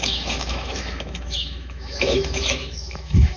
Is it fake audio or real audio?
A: fake